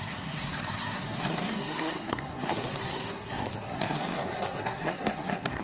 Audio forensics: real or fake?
fake